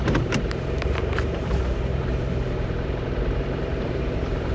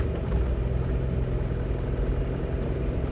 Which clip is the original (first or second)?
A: second